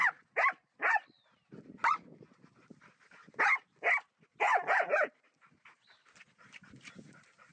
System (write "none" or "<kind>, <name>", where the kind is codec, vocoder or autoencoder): none